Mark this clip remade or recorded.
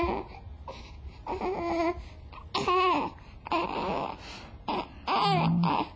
recorded